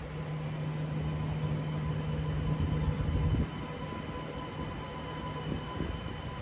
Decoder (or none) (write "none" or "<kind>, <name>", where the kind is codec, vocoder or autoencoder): none